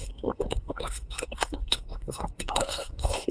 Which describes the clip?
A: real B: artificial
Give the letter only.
B